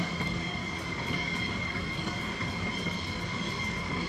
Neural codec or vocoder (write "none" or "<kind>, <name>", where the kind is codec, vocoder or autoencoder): codec, DAC